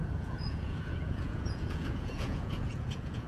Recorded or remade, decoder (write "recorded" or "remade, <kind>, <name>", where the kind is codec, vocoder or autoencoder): remade, vocoder, Vocos